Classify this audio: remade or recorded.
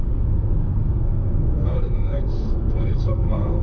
remade